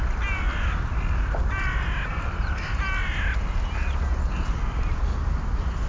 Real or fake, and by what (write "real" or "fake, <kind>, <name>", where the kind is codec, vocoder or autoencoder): real